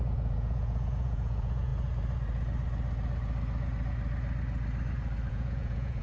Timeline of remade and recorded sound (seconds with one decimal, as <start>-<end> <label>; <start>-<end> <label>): 0.0-1.7 remade; 1.7-5.3 recorded; 5.3-6.0 remade